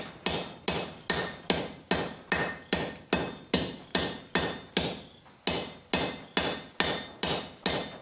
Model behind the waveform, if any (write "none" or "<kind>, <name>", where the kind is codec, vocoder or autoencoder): none